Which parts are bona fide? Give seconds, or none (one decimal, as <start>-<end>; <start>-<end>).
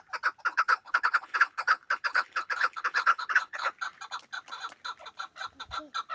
0.0-0.5; 3.7-6.1